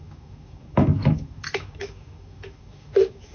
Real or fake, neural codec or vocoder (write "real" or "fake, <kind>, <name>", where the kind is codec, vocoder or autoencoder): fake, autoencoder, DAC-VAE